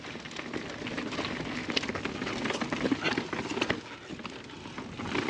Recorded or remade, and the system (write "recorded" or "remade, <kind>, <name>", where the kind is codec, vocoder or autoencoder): recorded